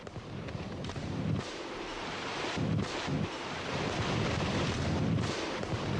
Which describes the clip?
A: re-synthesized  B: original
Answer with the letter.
A